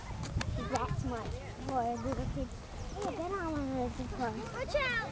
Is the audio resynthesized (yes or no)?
no